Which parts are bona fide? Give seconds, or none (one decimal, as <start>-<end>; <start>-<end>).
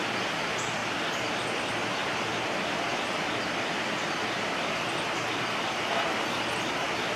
0.0-7.2